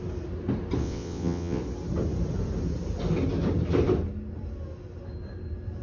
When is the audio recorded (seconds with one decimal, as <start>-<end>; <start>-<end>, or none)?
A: 0.0-0.8; 1.6-5.8

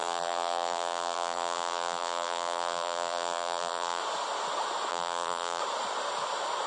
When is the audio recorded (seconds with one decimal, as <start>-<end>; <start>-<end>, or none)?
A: 4.0-4.9; 5.6-6.7

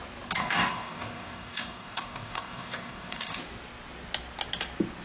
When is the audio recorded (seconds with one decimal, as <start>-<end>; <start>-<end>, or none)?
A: 0.0-0.4; 3.4-5.0

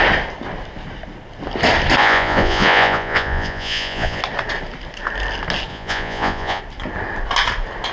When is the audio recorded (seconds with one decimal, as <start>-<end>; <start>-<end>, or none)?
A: 0.0-2.0; 4.2-5.7; 6.6-7.9

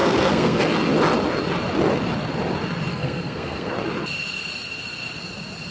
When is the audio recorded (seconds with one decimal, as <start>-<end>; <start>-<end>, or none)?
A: 0.6-2.9; 3.7-5.7

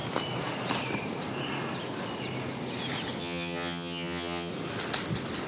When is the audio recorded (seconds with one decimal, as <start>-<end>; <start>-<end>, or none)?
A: 0.0-3.2; 4.5-5.5

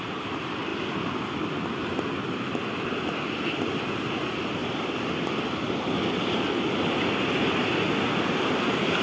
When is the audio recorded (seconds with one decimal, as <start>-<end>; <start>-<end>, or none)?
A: 0.0-9.0

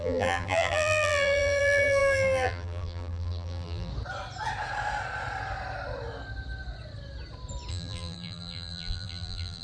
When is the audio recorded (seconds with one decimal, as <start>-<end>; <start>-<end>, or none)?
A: 3.9-7.7